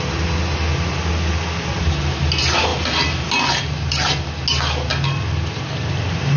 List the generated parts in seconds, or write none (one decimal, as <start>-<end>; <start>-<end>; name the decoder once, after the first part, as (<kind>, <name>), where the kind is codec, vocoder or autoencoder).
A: none